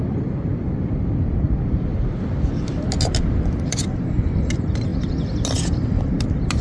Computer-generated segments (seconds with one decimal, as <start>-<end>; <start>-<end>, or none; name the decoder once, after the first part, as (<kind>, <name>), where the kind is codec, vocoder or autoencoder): none